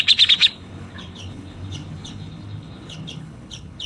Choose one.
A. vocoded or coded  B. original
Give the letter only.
A